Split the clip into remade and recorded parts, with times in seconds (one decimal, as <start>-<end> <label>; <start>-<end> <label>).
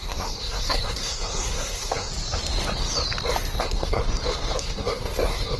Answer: 0.0-2.1 remade; 2.1-3.6 recorded; 3.6-4.0 remade; 4.0-4.6 recorded; 4.6-5.6 remade